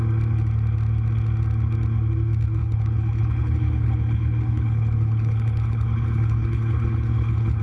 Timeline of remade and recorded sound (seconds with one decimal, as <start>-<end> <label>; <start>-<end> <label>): 0.0-2.6 recorded; 2.6-7.6 remade